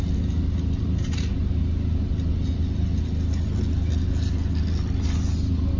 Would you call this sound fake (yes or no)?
no